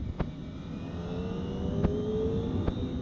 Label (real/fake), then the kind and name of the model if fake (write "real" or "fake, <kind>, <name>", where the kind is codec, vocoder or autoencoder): real